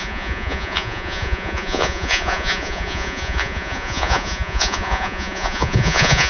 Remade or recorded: remade